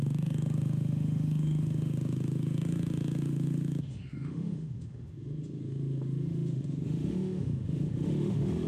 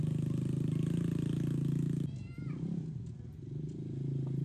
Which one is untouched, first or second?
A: second